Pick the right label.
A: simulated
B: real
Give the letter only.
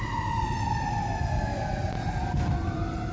A